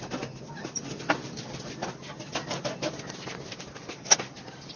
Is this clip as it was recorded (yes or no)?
no